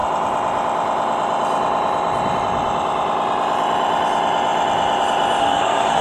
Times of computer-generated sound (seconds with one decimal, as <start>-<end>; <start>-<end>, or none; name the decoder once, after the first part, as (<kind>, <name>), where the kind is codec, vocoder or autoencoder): 5.4-6.0 (codec, SNAC)